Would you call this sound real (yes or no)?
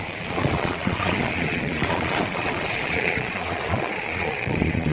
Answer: no